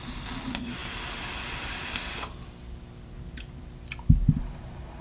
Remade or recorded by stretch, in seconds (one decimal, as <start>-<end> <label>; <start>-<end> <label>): 0.0-5.0 recorded